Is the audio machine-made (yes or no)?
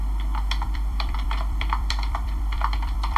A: yes